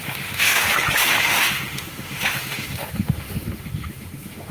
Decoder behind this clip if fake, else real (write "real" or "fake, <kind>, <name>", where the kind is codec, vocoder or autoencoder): fake, autoencoder, DAC-VAE